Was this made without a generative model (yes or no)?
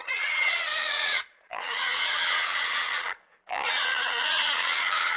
no